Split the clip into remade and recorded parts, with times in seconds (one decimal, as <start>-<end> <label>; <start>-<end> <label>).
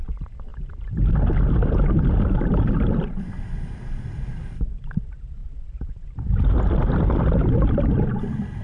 0.0-8.6 remade